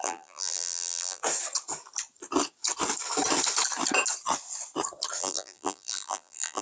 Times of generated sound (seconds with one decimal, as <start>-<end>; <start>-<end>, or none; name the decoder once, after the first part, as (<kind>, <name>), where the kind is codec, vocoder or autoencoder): 0.0-1.2 (vocoder, BigVGAN v2); 5.2-6.6